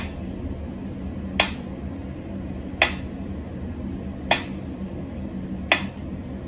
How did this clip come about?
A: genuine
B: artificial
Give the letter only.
A